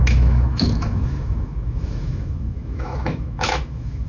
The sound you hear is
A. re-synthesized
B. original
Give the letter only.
A